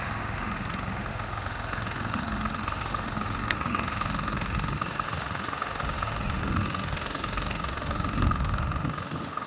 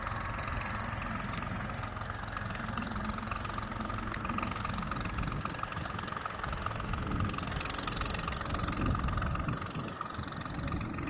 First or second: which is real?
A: second